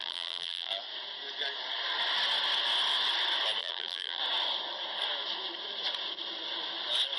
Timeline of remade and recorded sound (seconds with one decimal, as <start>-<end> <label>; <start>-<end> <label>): 0.0-0.7 remade; 0.7-3.6 recorded; 3.6-4.2 remade; 4.2-7.2 recorded